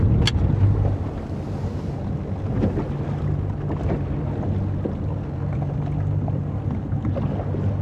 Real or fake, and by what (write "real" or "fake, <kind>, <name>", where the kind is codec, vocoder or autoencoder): real